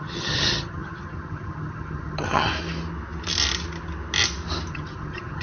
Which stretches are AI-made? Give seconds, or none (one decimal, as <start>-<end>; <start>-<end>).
0.0-2.5; 4.7-5.4

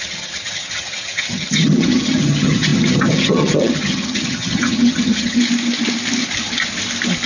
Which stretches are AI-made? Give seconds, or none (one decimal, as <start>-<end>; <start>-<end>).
0.0-5.4

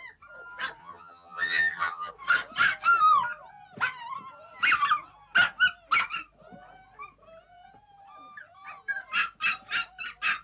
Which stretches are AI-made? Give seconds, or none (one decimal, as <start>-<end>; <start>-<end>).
0.8-2.1